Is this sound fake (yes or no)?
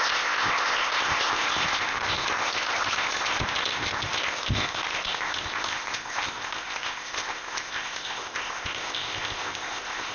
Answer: yes